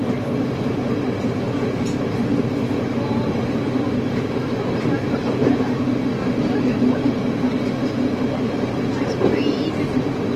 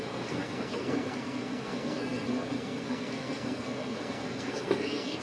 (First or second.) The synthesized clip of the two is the second